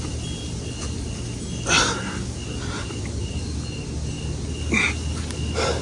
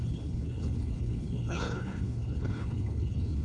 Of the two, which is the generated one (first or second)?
second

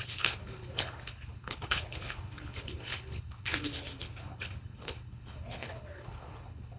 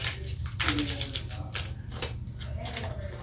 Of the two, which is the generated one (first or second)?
first